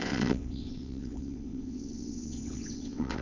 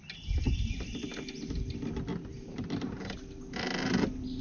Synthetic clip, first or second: first